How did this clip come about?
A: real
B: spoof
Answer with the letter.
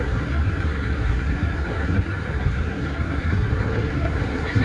B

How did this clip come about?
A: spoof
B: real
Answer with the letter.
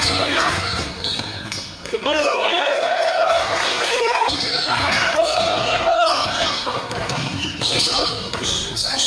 A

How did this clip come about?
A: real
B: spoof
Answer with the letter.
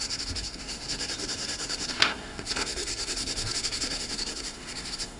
B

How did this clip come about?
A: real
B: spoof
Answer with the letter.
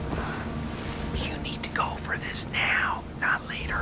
A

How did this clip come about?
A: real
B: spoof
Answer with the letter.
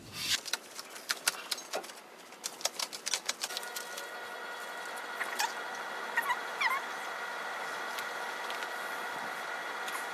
A